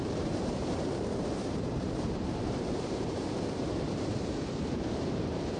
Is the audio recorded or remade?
remade